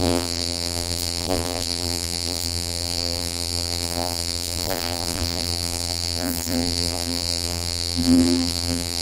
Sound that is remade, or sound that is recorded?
remade